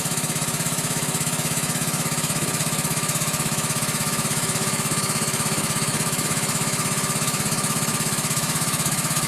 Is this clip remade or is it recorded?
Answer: remade